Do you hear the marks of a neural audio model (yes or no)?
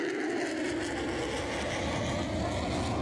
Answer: no